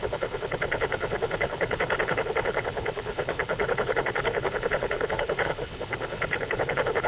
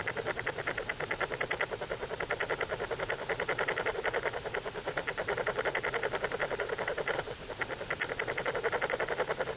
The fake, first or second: first